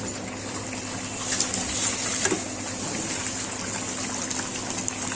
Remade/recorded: recorded